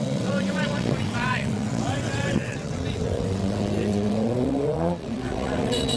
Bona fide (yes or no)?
no